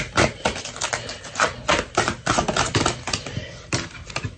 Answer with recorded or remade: recorded